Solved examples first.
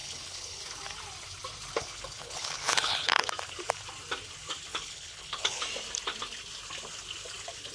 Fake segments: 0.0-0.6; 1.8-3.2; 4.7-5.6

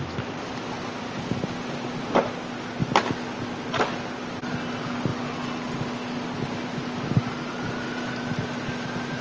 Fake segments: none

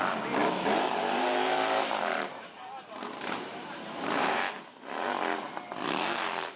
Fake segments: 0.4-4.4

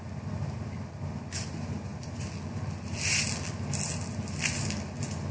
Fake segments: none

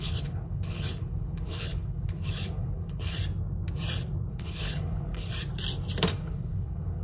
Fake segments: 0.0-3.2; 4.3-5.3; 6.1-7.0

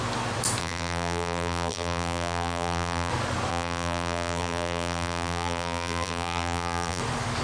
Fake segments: 0.6-3.1; 3.5-7.0

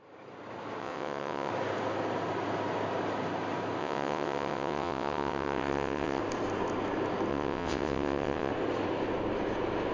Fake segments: 0.8-1.5; 3.8-6.2; 7.3-8.5